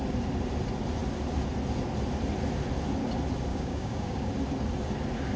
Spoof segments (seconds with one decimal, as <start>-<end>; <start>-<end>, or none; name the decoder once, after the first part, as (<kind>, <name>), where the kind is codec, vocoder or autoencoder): 3.5-4.3 (codec, DAC)